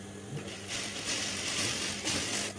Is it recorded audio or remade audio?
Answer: recorded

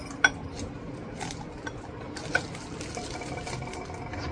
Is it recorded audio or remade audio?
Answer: recorded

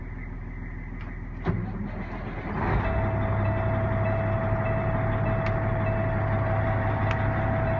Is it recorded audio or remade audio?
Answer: recorded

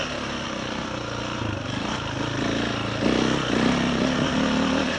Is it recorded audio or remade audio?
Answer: recorded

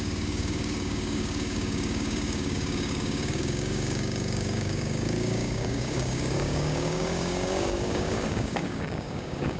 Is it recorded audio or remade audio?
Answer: remade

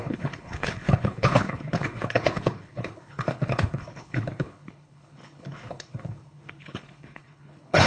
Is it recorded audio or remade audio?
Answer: remade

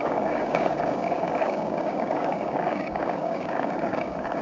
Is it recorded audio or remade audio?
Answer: remade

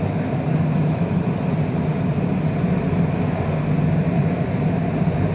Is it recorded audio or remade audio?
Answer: recorded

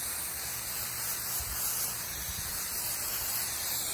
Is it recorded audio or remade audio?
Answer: recorded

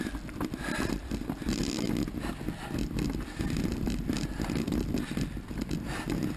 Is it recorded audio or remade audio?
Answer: recorded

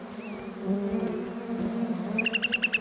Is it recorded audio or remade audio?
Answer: recorded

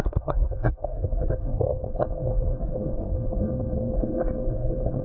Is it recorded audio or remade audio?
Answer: remade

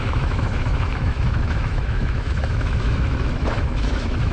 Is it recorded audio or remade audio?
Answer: remade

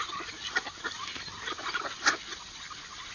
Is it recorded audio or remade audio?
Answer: recorded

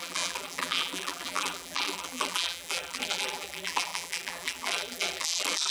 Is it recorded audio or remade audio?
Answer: remade